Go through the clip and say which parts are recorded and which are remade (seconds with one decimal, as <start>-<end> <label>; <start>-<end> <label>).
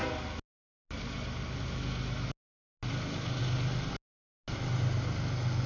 0.0-5.7 recorded